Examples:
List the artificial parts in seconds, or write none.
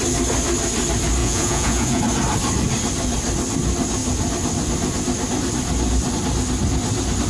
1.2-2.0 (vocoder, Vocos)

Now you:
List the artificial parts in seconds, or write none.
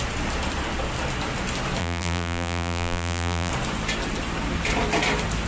1.8-3.5 (vocoder, BigVGAN v2)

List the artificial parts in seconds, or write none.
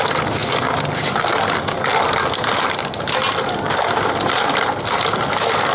none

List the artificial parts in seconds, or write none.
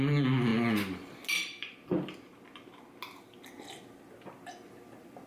none